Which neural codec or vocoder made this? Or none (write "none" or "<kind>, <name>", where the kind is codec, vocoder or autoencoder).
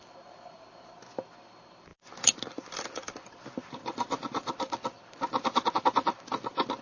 vocoder, BigVGAN v2